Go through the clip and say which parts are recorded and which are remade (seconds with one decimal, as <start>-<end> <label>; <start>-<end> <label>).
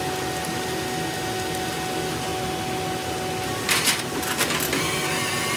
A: 0.0-5.6 recorded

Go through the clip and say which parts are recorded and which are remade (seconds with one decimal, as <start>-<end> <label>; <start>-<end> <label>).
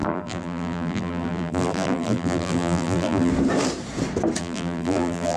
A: 0.0-3.3 remade; 3.3-4.4 recorded; 4.4-5.4 remade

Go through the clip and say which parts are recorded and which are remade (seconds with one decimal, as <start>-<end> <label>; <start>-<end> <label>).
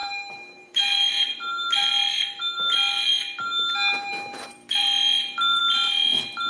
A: 0.0-1.1 remade; 1.1-4.1 recorded; 4.1-5.6 remade; 5.6-6.5 recorded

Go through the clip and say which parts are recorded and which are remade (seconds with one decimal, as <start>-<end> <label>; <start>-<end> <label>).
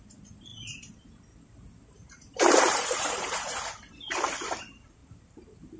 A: 0.0-2.0 recorded; 2.0-3.9 remade; 3.9-5.0 recorded; 5.0-5.8 remade